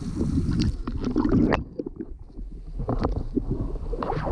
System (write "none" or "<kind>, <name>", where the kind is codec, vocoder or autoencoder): none